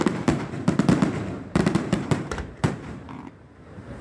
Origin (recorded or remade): remade